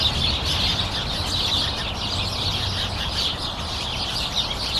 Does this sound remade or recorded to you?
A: recorded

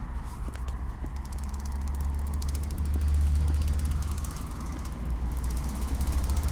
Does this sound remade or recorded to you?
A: remade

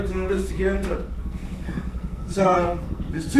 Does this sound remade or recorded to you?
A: remade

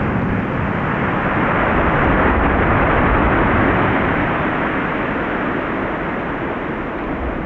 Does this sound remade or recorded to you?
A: recorded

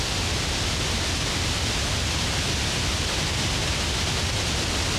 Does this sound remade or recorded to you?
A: recorded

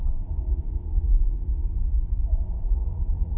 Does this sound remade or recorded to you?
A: remade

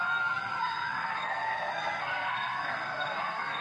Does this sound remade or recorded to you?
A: remade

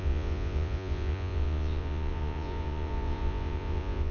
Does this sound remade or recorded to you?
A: remade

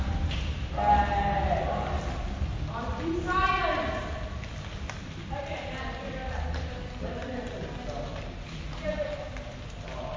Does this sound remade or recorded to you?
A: recorded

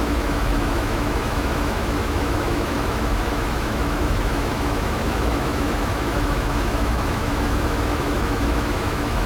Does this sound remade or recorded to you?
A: remade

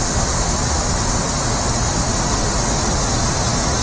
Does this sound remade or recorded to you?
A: recorded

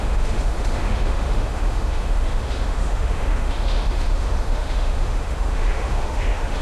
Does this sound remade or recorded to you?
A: remade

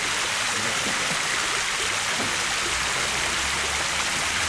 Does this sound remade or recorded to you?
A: recorded